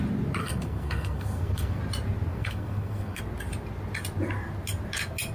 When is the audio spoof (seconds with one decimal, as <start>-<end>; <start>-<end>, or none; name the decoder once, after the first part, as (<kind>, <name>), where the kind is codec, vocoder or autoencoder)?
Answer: 0.4-1.8 (codec, SNAC); 2.3-3.2